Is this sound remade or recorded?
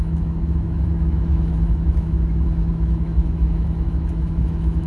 remade